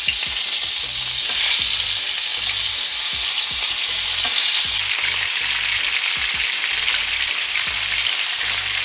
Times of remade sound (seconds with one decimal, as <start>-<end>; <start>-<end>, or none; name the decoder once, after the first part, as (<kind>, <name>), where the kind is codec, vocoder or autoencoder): none